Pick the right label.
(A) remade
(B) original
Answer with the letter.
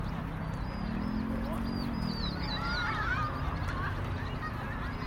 B